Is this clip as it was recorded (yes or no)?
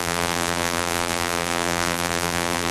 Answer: no